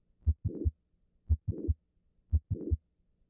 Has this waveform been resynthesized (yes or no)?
no